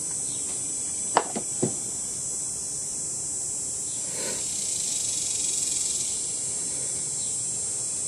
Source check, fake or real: real